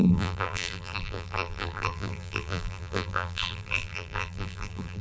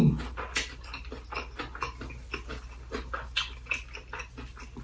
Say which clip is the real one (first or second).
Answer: second